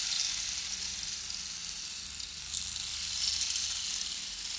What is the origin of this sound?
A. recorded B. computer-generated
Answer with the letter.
A